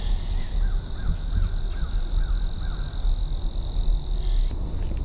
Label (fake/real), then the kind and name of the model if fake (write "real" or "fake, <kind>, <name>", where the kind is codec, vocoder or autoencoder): real